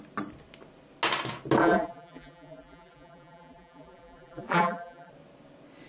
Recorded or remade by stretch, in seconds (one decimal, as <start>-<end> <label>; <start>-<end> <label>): 0.0-1.6 recorded; 1.6-5.1 remade; 5.1-5.9 recorded